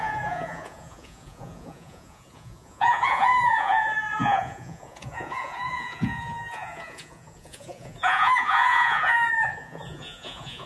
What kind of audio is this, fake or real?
fake